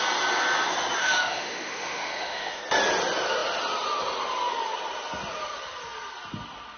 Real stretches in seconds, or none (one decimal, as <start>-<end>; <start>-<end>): 0.0-1.0; 2.6-6.8